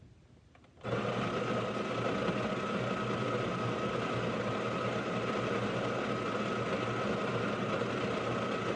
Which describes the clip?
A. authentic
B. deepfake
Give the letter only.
A